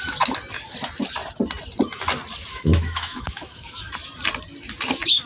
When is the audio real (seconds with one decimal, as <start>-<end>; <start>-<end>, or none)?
0.0-2.5; 3.9-5.3

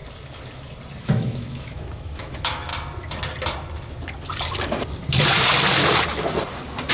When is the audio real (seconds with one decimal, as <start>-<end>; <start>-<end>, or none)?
0.0-1.0; 2.7-6.9